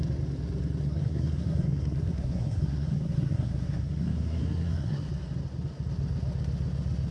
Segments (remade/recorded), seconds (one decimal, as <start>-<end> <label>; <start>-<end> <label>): 0.0-0.8 recorded; 0.8-5.1 remade; 5.1-7.1 recorded